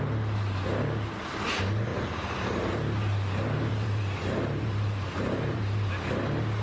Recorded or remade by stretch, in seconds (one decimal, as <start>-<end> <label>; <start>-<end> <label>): 0.0-1.9 recorded; 1.9-5.9 remade; 5.9-6.6 recorded